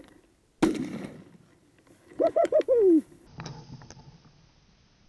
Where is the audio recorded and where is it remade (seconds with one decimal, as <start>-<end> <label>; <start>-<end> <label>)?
0.0-2.1 recorded; 2.1-2.6 remade; 2.6-5.1 recorded